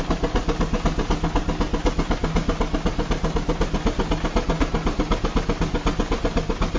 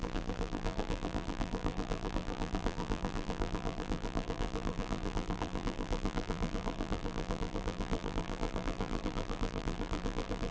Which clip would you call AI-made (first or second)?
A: second